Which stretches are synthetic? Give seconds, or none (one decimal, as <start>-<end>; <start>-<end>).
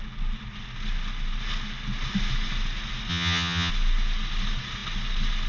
3.1-3.7